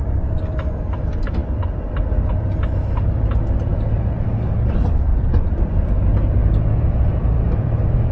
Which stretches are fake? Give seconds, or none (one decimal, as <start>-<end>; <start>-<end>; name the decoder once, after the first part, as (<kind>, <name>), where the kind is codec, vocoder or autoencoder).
0.0-5.1 (vocoder, BigVGAN v2); 5.6-8.1